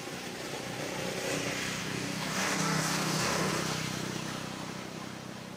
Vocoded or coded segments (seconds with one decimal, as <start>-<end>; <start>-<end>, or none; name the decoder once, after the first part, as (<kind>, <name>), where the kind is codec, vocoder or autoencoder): 1.8-3.5 (codec, DAC)